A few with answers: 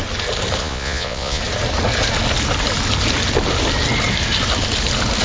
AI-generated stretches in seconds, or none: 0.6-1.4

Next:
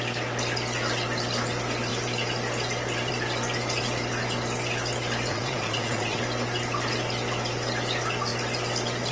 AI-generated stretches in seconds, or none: 5.3-6.2